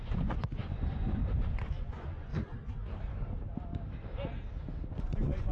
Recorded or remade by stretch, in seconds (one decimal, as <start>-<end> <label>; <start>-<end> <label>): 0.0-2.3 remade; 2.3-4.9 recorded; 4.9-5.5 remade